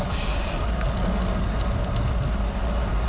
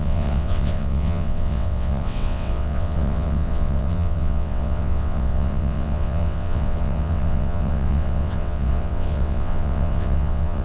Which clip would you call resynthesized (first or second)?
second